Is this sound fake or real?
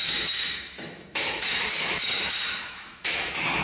fake